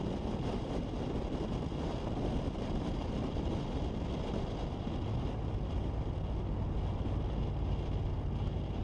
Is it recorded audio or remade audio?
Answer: recorded